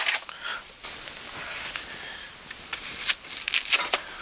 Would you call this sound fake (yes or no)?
no